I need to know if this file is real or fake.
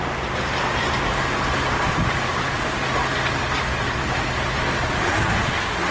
real